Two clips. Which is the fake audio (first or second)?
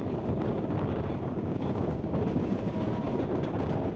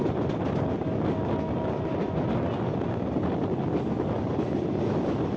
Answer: first